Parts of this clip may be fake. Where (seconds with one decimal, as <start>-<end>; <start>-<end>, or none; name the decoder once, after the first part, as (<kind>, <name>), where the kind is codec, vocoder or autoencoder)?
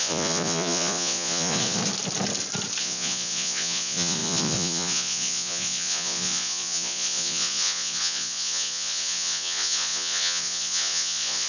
0.0-1.8 (vocoder, Vocos); 2.8-11.5